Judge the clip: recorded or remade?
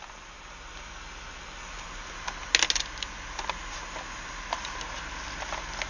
recorded